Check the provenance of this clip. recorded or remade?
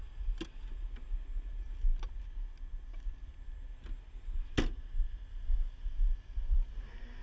recorded